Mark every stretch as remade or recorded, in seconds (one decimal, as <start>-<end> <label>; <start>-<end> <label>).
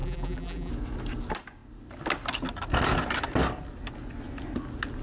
0.0-0.7 remade; 0.7-5.0 recorded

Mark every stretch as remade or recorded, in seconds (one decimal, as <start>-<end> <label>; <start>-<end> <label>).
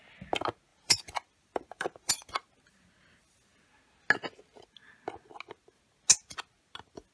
0.0-0.7 recorded; 0.7-2.3 remade; 2.3-7.1 recorded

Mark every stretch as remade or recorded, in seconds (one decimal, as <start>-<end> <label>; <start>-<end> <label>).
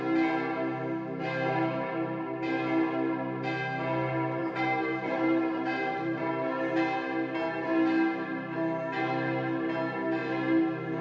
0.0-4.4 recorded; 4.4-6.3 remade; 6.3-11.0 recorded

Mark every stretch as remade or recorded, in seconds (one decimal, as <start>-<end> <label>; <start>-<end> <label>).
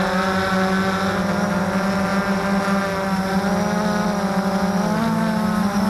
0.0-5.9 recorded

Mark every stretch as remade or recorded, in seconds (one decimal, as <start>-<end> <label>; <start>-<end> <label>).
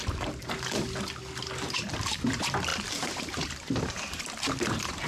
0.0-5.1 recorded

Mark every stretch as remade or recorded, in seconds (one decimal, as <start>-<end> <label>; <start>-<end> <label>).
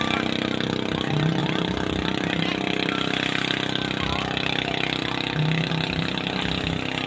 0.0-7.1 recorded